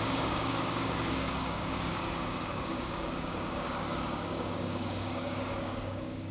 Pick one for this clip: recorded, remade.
remade